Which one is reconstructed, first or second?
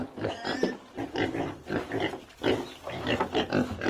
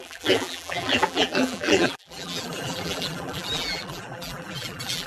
second